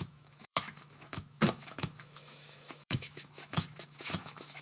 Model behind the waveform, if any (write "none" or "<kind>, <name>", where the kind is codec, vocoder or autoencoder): autoencoder, DAC-VAE